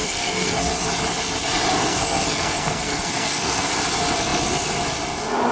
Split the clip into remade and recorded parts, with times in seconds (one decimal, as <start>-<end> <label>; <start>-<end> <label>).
0.0-0.7 remade; 0.7-1.8 recorded; 1.8-3.7 remade; 3.7-5.5 recorded